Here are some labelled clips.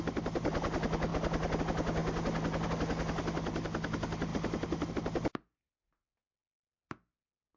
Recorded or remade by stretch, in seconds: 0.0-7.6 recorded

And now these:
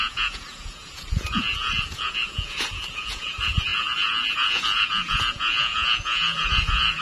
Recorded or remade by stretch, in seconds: 0.0-7.0 remade

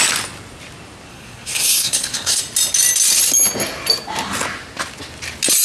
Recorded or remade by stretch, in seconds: 0.0-1.1 recorded; 1.1-2.4 remade; 2.4-5.6 recorded